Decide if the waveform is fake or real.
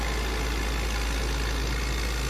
real